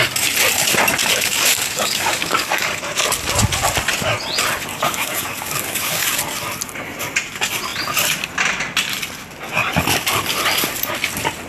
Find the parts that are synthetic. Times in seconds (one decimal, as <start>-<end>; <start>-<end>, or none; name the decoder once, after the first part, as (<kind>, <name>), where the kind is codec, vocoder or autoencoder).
1.0-2.8 (codec, DAC); 4.7-6.2